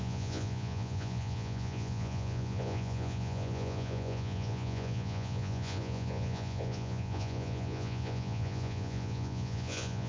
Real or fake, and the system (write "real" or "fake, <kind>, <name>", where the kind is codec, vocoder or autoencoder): fake, vocoder, Vocos